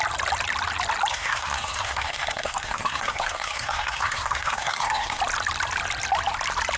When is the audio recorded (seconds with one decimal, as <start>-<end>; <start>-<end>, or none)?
0.0-1.1; 5.2-6.8